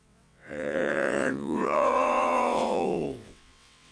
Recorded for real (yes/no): no